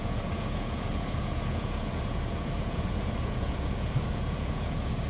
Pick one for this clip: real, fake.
fake